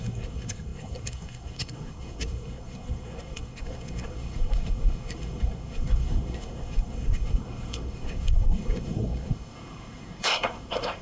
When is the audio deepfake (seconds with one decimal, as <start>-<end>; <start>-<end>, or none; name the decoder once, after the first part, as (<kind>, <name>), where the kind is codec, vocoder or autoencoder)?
0.0-11.0 (codec, SNAC)

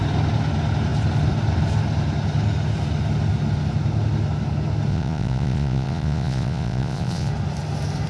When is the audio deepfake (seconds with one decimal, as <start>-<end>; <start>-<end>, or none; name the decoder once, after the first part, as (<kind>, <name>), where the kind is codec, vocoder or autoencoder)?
4.9-7.3 (vocoder, Vocos)

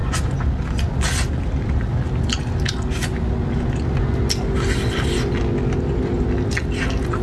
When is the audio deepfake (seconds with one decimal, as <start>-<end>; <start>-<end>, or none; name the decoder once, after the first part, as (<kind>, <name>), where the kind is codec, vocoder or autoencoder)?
none

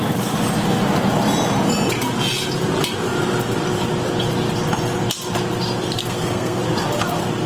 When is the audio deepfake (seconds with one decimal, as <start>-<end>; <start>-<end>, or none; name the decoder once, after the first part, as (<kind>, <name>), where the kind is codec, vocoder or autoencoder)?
6.0-6.6 (codec, SNAC)

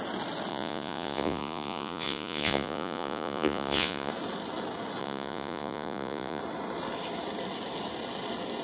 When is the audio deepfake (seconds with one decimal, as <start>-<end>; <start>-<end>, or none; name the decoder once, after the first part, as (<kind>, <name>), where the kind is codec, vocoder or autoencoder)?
0.5-4.1 (vocoder, Vocos); 5.0-6.4

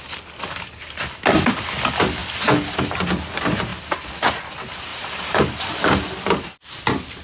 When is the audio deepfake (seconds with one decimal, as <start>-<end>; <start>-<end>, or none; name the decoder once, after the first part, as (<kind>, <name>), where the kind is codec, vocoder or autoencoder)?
4.9-6.0 (vocoder, BigVGAN v2)